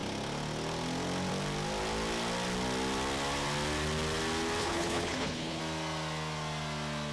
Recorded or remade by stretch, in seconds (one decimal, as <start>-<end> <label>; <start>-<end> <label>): 0.0-4.6 recorded; 4.6-5.6 remade; 5.6-7.1 recorded